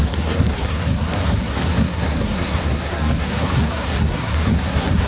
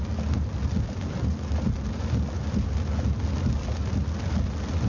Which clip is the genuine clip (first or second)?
second